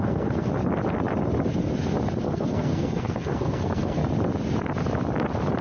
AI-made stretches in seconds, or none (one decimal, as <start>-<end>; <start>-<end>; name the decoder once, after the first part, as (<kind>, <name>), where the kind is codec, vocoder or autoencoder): 0.0-0.5 (codec, SNAC); 2.2-4.0